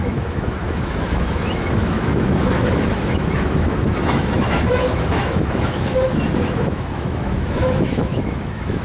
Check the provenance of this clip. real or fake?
fake